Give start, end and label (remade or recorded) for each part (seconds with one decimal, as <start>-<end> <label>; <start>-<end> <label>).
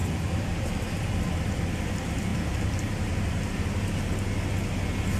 0.0-1.9 remade; 1.9-2.3 recorded; 2.3-3.6 remade; 3.6-5.2 recorded